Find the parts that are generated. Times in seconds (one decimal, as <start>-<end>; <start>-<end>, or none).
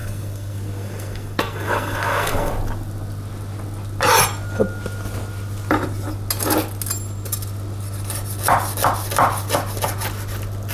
0.0-2.5